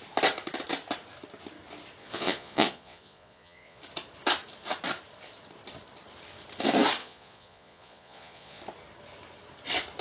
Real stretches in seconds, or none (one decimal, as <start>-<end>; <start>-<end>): 0.0-2.0; 3.8-7.0; 8.6-10.0